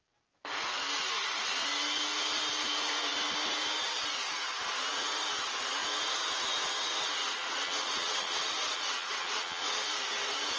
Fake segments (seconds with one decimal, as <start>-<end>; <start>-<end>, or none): 7.2-9.8